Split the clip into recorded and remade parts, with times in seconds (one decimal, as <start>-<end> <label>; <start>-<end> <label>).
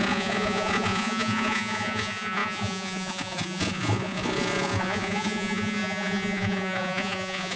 0.0-7.6 remade